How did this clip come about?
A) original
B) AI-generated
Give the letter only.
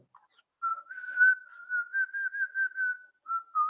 A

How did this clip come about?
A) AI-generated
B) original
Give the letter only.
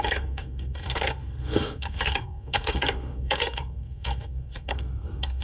A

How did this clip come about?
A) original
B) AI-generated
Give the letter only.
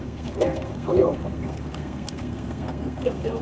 B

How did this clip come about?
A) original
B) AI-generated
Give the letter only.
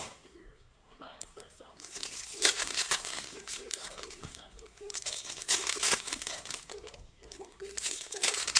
B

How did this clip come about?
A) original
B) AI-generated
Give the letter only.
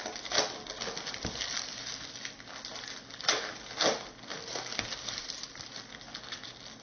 A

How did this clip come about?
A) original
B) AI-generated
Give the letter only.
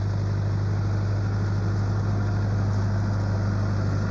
A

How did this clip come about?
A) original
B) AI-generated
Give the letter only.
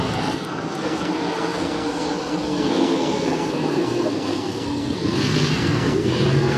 B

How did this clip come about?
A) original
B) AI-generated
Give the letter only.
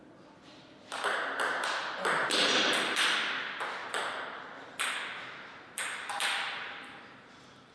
A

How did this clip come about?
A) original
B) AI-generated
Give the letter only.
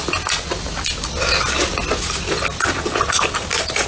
A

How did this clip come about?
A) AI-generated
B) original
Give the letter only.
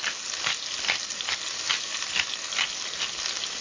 B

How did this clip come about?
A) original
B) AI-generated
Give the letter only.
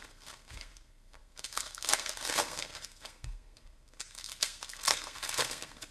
B